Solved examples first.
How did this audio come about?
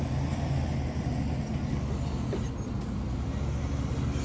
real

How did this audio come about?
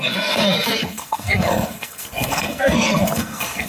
fake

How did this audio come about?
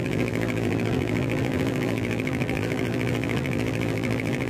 fake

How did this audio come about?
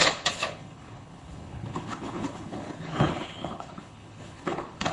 fake